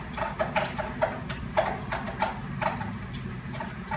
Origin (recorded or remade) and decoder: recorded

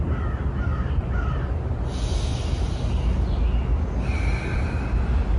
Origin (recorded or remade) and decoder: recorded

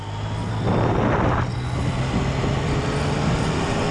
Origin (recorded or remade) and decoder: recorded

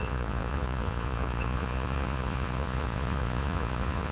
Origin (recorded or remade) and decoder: remade, vocoder, Vocos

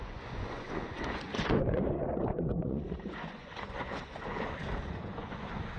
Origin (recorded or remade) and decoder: remade, vocoder, Vocos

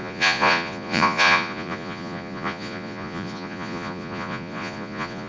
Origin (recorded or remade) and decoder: remade, vocoder, Vocos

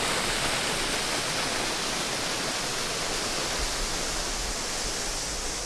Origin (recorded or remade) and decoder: recorded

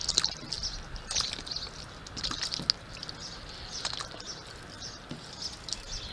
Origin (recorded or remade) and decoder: recorded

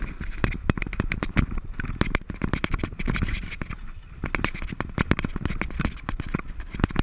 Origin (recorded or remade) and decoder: recorded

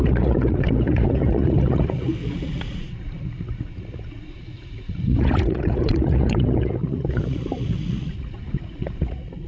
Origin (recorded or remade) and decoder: remade, vocoder, Vocos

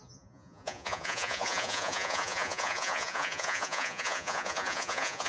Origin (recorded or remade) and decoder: remade, vocoder, Vocos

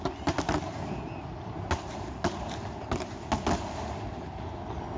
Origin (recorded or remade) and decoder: recorded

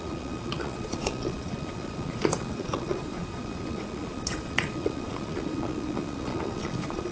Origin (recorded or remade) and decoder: remade, vocoder, Vocos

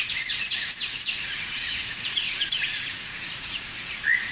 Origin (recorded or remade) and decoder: remade, vocoder, Vocos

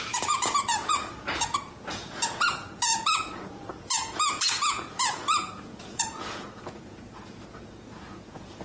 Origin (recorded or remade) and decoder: remade, vocoder, Vocos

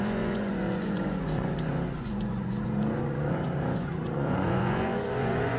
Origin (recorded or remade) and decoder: remade, vocoder, Vocos